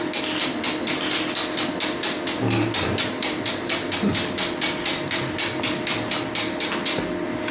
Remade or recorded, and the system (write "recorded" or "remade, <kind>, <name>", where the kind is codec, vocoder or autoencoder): recorded